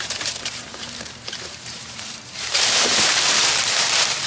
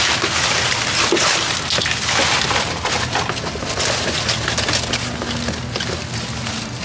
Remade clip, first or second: first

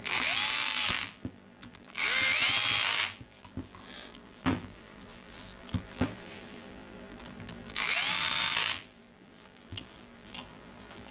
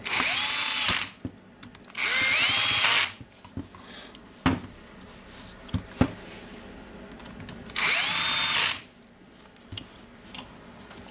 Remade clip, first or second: first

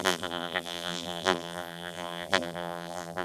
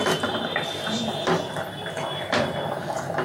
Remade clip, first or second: first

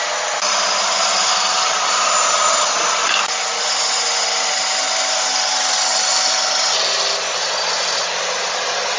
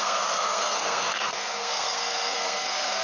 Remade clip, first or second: second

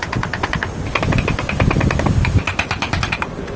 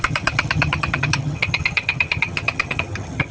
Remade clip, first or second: second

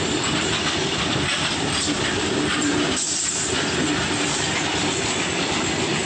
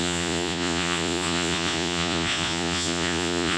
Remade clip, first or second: second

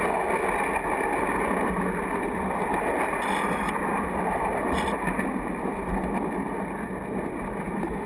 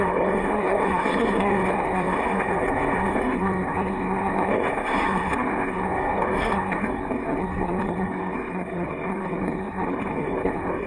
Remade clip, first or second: second